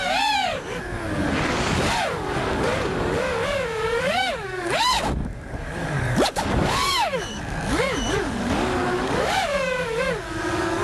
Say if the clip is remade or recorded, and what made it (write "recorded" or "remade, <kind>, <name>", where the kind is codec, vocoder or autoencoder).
remade, codec, DAC